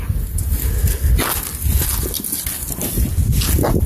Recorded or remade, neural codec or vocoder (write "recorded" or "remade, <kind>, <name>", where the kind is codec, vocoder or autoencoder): recorded